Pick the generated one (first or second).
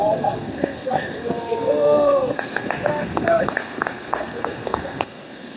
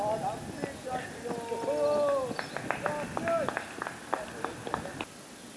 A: first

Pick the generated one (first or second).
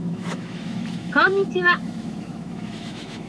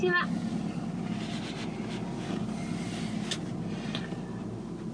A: first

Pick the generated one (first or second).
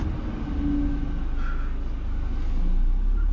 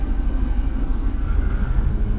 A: second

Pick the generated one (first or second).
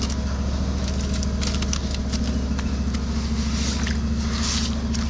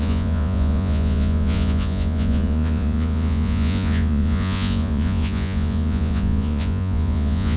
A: second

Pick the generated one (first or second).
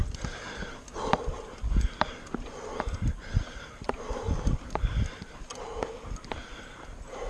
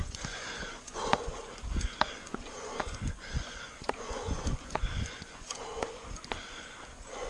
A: second